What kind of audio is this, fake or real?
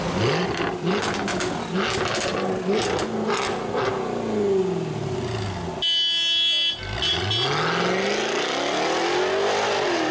real